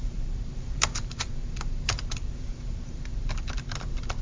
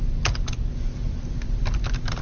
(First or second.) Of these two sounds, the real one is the second